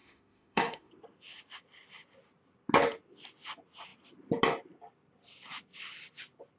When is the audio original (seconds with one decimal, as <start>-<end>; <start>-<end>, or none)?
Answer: 0.9-6.6